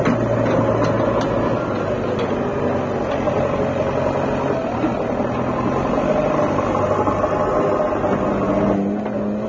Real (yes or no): yes